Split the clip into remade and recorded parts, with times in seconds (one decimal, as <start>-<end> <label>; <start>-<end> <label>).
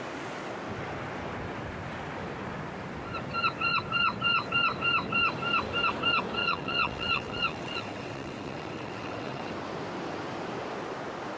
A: 0.0-6.4 recorded; 6.4-9.5 remade; 9.5-11.4 recorded